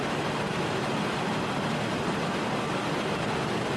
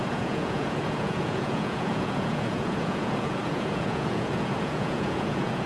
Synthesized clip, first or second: second